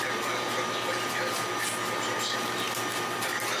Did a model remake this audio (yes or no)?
no